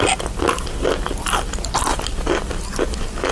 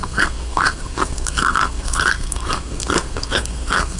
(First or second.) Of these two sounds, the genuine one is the first